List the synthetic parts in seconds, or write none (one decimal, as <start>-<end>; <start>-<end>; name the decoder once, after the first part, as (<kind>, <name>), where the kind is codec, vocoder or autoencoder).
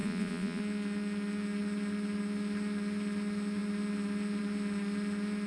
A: 0.0-0.6 (vocoder, Vocos)